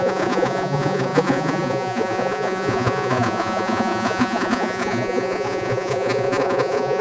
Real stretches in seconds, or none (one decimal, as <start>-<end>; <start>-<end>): none